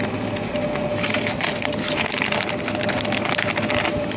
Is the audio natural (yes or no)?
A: yes